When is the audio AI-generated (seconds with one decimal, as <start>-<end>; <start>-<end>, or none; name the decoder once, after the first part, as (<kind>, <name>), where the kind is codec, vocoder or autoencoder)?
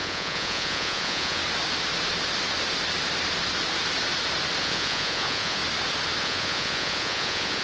0.0-1.4 (vocoder, Vocos); 4.6-5.6; 6.2-7.6